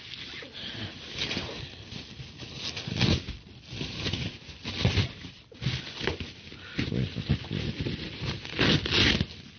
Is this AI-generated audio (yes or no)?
no